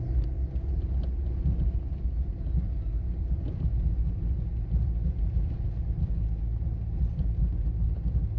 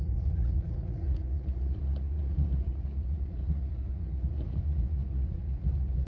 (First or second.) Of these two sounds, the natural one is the first